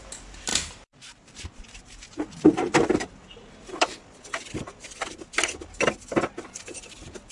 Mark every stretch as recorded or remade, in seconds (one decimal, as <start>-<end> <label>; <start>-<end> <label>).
0.0-0.5 recorded; 0.5-3.9 remade; 3.9-7.3 recorded